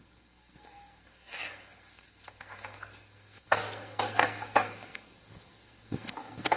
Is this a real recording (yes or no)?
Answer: no